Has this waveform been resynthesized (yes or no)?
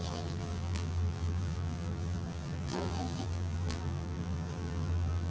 yes